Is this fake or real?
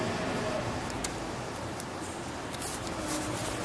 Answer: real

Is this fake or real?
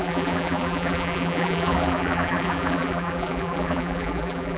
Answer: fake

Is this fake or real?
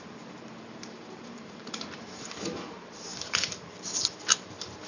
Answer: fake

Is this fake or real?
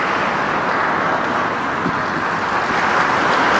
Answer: real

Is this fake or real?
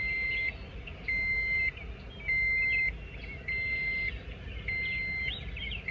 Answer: real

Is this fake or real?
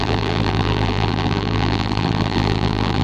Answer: fake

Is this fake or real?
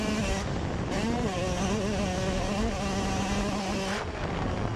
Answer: real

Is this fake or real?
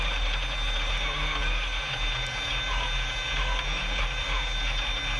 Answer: real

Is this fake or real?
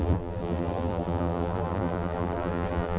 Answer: fake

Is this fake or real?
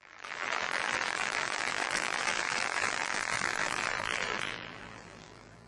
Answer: fake